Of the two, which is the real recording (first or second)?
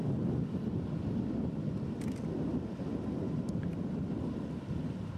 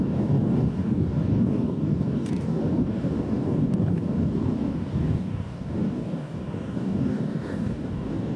first